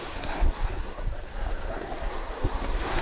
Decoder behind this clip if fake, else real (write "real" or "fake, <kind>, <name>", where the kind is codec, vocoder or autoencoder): fake, codec, SNAC